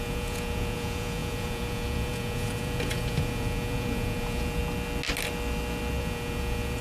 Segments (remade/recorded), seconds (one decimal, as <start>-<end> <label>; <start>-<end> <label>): 0.0-4.6 remade; 4.6-6.0 recorded; 6.0-6.8 remade